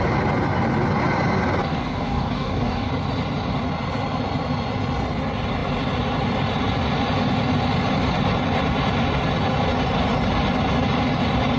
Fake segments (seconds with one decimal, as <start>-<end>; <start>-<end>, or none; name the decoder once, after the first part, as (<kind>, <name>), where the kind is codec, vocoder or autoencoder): 1.6-2.9 (codec, DAC)